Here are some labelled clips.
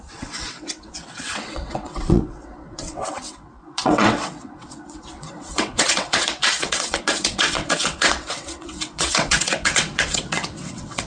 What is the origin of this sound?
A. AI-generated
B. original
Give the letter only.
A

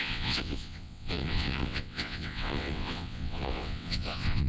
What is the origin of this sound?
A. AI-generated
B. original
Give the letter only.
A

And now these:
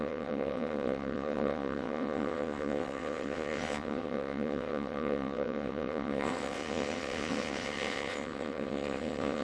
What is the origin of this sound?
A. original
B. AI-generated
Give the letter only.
B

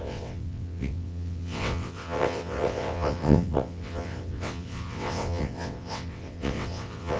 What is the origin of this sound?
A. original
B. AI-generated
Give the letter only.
B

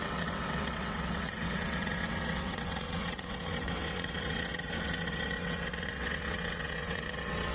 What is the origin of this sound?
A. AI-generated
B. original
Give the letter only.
A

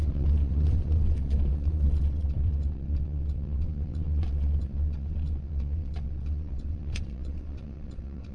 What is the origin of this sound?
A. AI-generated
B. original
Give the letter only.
A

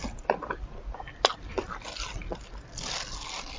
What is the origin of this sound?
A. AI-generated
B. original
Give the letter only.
B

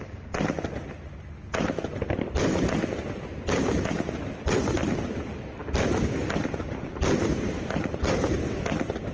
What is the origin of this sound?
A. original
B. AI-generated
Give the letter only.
A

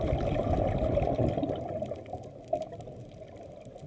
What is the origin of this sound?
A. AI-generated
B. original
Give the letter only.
B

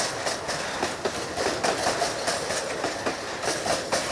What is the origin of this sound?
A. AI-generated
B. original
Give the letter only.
B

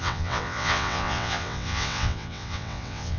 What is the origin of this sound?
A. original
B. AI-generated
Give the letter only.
B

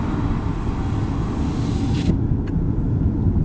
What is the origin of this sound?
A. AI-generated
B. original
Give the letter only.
B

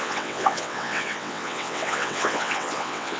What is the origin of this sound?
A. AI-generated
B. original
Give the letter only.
A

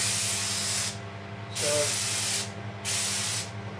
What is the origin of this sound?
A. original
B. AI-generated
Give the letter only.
A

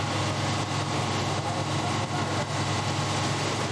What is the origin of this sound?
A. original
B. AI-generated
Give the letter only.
A